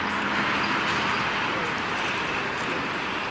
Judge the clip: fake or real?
real